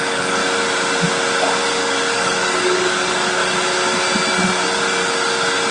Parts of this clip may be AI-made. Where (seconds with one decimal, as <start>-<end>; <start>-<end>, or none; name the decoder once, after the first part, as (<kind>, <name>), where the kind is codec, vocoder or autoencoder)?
0.0-0.4 (codec, DAC); 1.8-3.4